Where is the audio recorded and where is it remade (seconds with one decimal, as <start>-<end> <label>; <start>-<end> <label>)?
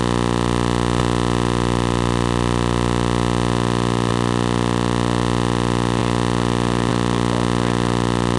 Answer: 0.0-8.4 recorded